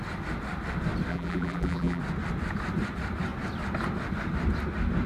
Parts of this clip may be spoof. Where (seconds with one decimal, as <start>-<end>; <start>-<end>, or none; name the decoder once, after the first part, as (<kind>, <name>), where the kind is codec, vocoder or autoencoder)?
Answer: 1.1-2.0 (vocoder, BigVGAN v2)